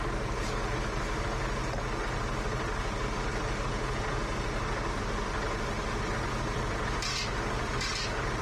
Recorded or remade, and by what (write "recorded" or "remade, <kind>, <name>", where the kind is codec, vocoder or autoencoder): recorded